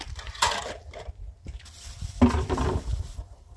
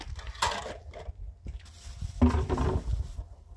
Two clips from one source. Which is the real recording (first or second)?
second